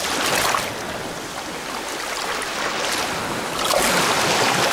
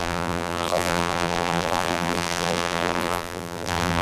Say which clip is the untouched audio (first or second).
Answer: first